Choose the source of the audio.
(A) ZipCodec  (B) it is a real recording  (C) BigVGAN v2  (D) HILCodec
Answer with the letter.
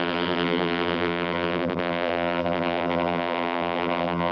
C